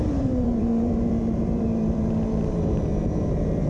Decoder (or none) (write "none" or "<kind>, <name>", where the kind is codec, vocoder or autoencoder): vocoder, BigVGAN v2